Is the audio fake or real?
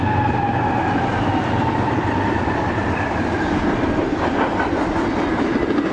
fake